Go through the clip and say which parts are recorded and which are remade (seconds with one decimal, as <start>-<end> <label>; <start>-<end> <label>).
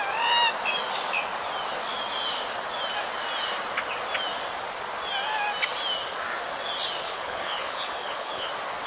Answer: 0.0-7.0 recorded; 7.0-8.5 remade; 8.5-8.9 recorded